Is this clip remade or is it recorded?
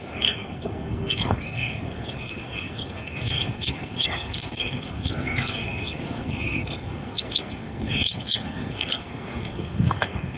remade